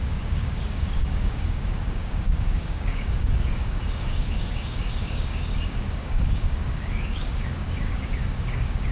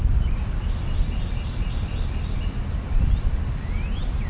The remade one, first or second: first